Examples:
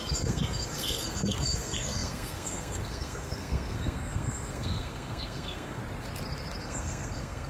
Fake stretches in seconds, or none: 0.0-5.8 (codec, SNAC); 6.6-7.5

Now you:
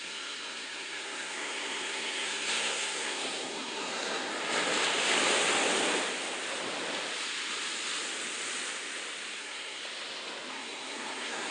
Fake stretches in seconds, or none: 0.0-4.3 (codec, SNAC); 9.4-9.8; 10.5-11.5

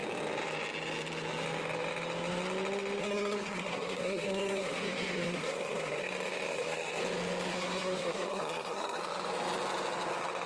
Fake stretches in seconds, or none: 3.0-6.1 (codec, SNAC); 6.5-7.0; 7.5-9.0

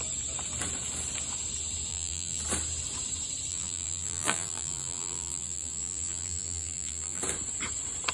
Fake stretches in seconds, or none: 1.9-2.4 (vocoder, BigVGAN v2); 3.5-7.2

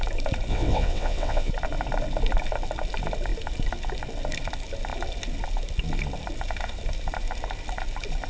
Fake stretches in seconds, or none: 0.5-1.5 (vocoder, WaveNeXt)